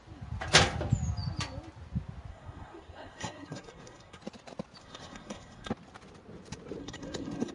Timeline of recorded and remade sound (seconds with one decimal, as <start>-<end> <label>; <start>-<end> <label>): 0.0-2.3 recorded; 2.3-4.2 remade; 4.2-4.8 recorded; 4.8-5.7 remade; 5.7-6.8 recorded; 6.8-7.5 remade